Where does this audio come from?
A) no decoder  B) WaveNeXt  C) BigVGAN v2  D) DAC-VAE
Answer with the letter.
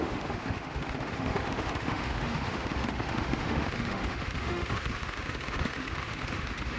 D